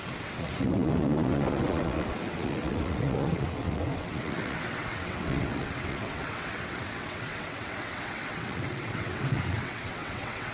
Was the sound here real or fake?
fake